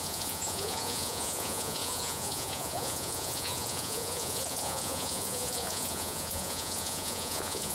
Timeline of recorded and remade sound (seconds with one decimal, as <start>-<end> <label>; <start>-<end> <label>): 0.0-7.7 remade